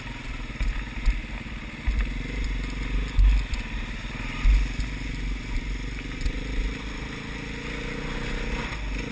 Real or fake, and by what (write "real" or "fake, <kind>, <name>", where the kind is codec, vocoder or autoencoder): real